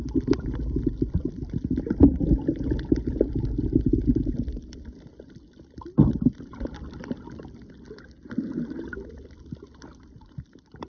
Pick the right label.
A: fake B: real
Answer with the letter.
B